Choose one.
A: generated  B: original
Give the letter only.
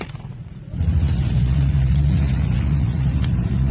A